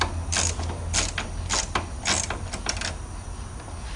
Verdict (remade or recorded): recorded